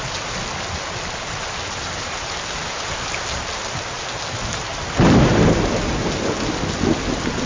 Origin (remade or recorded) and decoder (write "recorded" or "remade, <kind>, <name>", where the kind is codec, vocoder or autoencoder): recorded